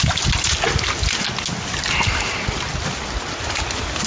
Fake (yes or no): no